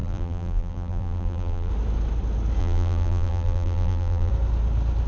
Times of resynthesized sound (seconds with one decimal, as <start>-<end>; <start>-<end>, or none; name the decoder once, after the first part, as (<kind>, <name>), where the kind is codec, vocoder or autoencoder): 0.0-1.7 (vocoder, BigVGAN v2); 2.6-4.3